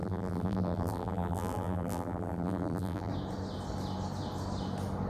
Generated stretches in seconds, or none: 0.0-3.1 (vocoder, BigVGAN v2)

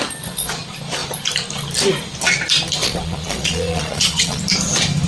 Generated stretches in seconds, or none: 2.8-4.4 (vocoder, Vocos)

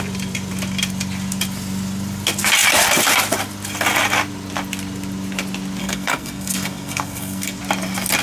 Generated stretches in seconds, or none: 5.8-7.6 (codec, SNAC)

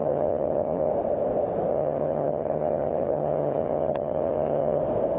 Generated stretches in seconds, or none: 0.0-0.9 (vocoder, HiFi-GAN); 1.7-4.8

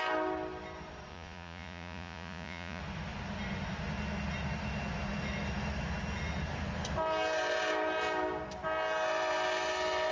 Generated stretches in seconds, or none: 1.1-2.8 (vocoder, Vocos)

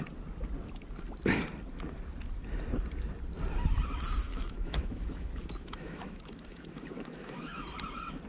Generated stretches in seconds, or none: 4.2-7.7 (autoencoder, DAC-VAE)

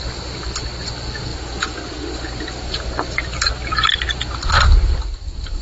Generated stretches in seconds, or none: none

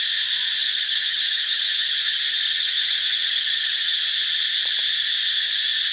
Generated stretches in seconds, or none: 0.6-4.1 (vocoder, HiFi-GAN)